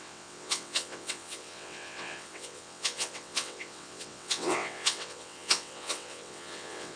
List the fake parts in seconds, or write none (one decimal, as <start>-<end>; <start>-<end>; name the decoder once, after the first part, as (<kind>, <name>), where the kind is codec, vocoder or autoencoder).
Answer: 0.0-7.0 (vocoder, WaveNeXt)